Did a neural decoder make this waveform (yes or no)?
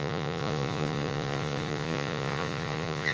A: yes